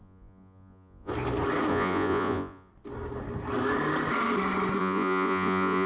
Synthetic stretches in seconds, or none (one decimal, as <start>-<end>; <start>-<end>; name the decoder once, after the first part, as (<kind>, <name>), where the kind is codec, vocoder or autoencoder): 0.0-1.1 (vocoder, Vocos); 1.7-2.7; 4.8-5.9